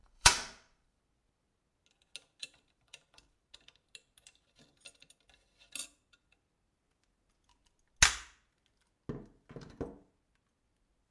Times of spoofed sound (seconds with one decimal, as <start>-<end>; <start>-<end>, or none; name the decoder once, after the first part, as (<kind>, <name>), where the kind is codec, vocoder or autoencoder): 0.0-1.0 (vocoder, BigVGAN v2); 2.4-3.5